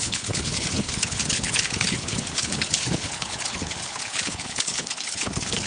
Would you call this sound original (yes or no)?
no